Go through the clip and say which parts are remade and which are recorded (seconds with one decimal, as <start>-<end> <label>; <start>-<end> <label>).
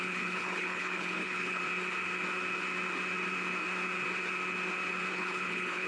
0.0-1.6 remade; 1.6-5.1 recorded; 5.1-5.9 remade